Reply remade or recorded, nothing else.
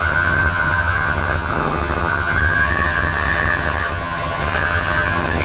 remade